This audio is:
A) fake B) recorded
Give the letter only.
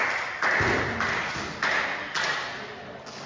B